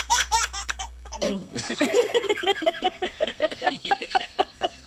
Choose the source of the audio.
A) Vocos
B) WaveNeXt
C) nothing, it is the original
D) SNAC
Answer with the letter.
D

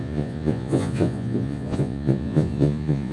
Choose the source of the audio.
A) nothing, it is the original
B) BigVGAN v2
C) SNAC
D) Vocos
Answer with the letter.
D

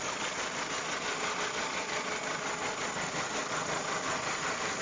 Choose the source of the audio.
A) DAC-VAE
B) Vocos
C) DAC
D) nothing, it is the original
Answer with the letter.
D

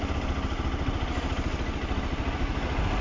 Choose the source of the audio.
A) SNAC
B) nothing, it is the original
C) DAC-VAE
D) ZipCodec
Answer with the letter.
B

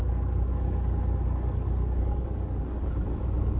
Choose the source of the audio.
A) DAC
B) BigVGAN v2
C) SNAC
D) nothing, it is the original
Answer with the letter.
A